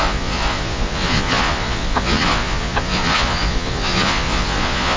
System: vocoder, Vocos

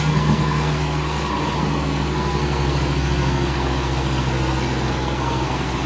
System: codec, SNAC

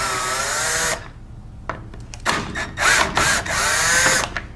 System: none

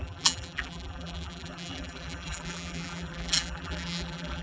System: vocoder, BigVGAN v2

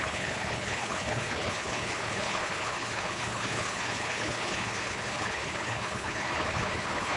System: codec, HILCodec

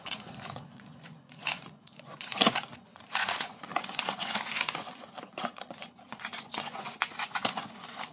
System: vocoder, Vocos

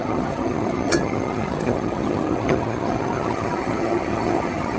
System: vocoder, HiFi-GAN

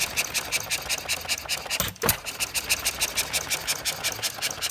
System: none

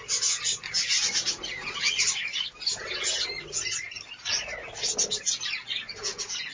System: none